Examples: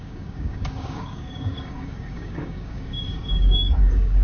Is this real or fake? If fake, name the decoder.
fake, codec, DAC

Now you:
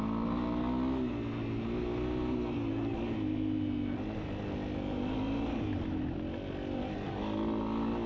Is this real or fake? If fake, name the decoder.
real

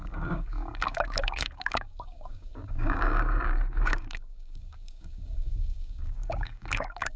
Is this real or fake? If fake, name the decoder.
fake, codec, DAC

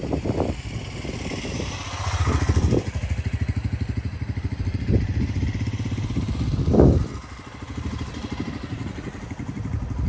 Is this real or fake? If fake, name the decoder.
real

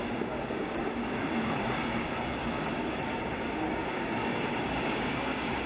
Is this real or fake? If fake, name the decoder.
fake, codec, DAC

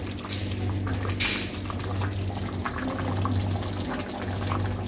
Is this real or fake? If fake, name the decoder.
real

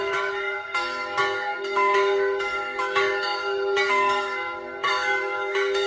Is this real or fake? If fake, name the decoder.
fake, codec, DAC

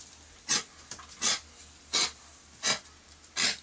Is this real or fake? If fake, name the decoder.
real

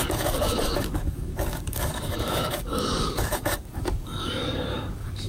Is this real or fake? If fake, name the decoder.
fake, codec, DAC